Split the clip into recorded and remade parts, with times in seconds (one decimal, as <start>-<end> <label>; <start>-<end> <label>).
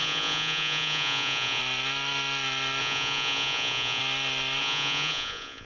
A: 0.0-1.6 remade; 1.6-2.8 recorded; 2.8-4.0 remade; 4.0-4.6 recorded; 4.6-5.7 remade